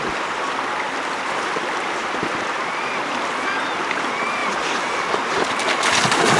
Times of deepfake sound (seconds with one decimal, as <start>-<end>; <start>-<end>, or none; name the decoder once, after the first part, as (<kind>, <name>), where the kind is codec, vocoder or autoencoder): 2.0-3.2 (vocoder, BigVGAN v2)